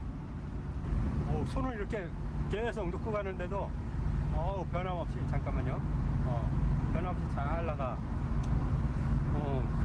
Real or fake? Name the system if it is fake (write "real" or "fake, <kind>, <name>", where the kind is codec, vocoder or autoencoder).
real